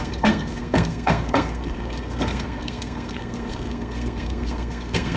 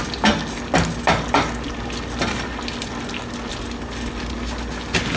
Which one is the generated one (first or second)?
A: first